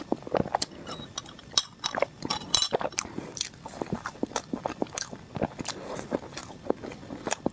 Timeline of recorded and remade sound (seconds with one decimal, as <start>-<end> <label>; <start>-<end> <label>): 0.0-7.5 recorded